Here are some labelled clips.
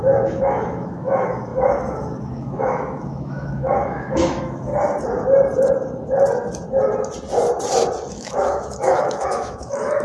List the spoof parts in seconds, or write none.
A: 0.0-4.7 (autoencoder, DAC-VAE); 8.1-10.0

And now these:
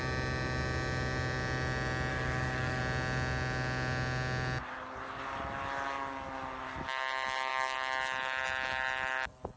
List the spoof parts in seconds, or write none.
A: 2.1-2.8 (codec, DAC)

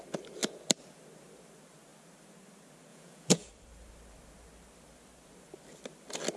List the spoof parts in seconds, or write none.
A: 2.9-3.5 (vocoder, Vocos)

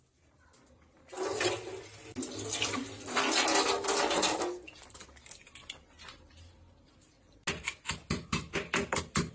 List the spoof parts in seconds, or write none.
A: none

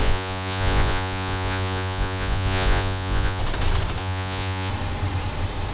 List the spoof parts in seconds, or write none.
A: 0.0-3.4 (vocoder, Vocos); 4.0-4.7